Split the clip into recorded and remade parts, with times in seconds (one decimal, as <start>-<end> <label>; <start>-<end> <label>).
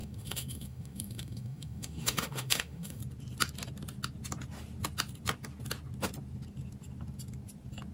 0.0-3.0 remade; 3.0-7.9 recorded